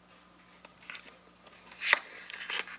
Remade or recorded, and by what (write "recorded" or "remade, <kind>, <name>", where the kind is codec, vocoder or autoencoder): recorded